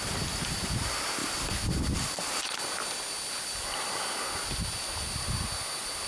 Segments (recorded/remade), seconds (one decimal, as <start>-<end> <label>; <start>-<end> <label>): 0.0-6.1 recorded